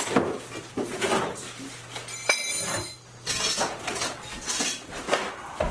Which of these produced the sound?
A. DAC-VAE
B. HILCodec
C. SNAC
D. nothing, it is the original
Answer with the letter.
D